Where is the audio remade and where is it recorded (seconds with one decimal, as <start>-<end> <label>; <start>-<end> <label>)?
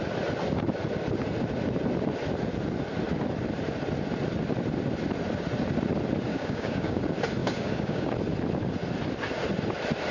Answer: 0.0-6.3 recorded; 6.3-7.0 remade; 7.0-7.4 recorded; 7.4-8.1 remade; 8.1-10.1 recorded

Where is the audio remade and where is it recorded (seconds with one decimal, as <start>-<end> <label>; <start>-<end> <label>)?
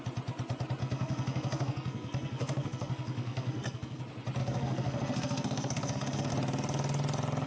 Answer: 0.0-0.8 recorded; 0.8-4.0 remade; 4.0-4.4 recorded; 4.4-6.3 remade; 6.3-7.5 recorded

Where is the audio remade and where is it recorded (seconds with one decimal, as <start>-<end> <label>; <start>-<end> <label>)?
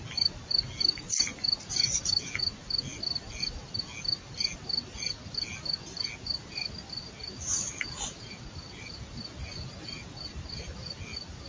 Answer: 0.0-11.5 recorded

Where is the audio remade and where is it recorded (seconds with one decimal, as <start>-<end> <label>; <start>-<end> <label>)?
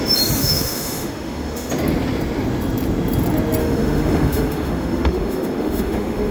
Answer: 0.0-0.4 recorded; 0.4-1.7 remade; 1.7-3.6 recorded; 3.6-6.3 remade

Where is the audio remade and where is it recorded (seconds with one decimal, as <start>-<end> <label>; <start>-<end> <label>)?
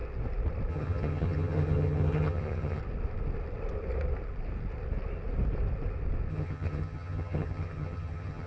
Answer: 0.0-0.7 recorded; 0.7-2.8 remade; 2.8-6.3 recorded; 6.3-8.5 remade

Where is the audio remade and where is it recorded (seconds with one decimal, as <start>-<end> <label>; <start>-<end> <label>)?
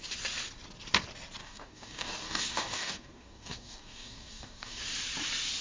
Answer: 0.0-1.4 recorded; 1.4-4.8 remade; 4.8-5.6 recorded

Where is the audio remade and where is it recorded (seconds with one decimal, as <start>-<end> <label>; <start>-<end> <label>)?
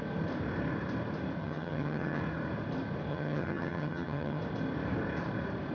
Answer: 0.0-1.4 recorded; 1.4-2.2 remade; 2.2-3.1 recorded; 3.1-4.4 remade; 4.4-5.7 recorded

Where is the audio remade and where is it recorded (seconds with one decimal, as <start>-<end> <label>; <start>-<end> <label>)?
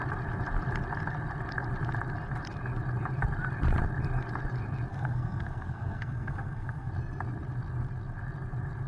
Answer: 0.0-4.9 recorded; 4.9-6.9 remade; 6.9-8.9 recorded